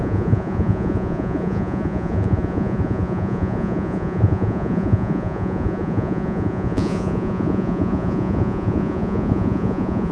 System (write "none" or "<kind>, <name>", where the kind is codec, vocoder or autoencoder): vocoder, Vocos